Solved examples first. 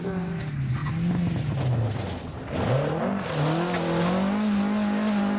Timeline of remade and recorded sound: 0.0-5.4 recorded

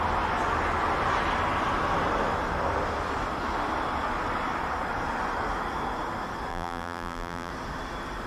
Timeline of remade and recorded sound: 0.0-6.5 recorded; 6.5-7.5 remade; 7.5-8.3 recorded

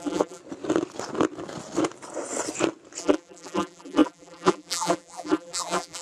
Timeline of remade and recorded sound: 0.0-0.4 remade; 0.4-3.0 recorded; 3.0-6.0 remade

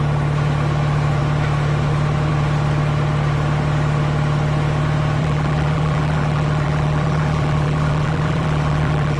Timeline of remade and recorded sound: 0.0-5.2 recorded; 5.2-9.2 remade

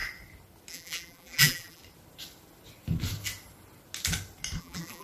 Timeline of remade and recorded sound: 0.0-0.7 recorded; 0.7-1.8 remade; 1.8-4.6 recorded; 4.6-5.0 remade